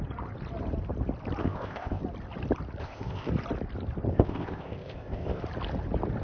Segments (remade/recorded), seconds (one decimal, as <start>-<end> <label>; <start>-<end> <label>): 0.0-1.4 recorded; 1.4-2.0 remade; 2.0-2.8 recorded; 2.8-3.3 remade; 3.3-4.1 recorded; 4.1-5.4 remade; 5.4-6.2 recorded